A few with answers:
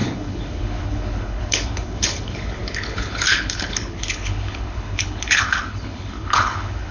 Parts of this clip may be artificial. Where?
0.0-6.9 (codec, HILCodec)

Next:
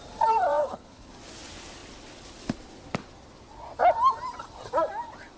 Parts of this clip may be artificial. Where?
0.6-1.1 (codec, HILCodec)

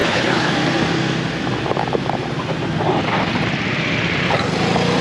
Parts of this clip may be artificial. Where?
0.0-0.5 (codec, HILCodec)

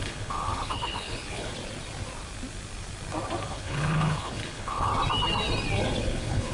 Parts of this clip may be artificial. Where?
0.0-1.5 (codec, HILCodec); 3.5-4.9; 6.0-6.5

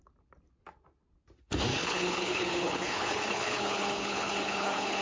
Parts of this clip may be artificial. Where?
1.7-5.0 (codec, HILCodec)

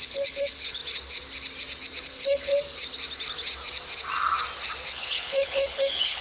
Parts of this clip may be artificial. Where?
0.0-0.8 (codec, HILCodec); 2.0-2.5; 4.9-6.2